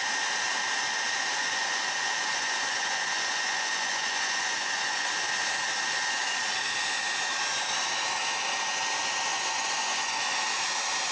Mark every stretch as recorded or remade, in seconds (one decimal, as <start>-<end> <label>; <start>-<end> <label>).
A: 0.0-1.4 recorded; 1.4-5.1 remade; 5.1-9.3 recorded; 9.3-10.4 remade; 10.4-11.1 recorded